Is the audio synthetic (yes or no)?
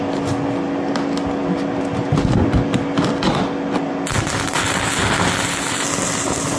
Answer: no